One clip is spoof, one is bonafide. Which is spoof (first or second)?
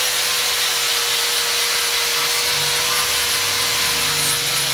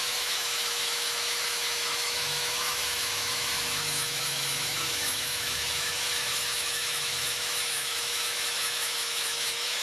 second